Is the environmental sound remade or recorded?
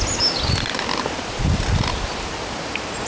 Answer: recorded